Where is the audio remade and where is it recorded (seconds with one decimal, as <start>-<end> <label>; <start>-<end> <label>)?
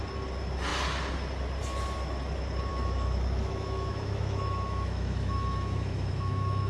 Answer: 0.0-2.7 recorded; 2.7-6.7 remade